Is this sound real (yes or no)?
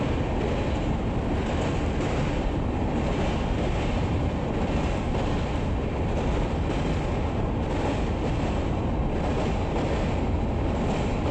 yes